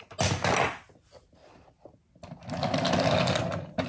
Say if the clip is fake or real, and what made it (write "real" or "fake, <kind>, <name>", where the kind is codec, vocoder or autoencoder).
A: real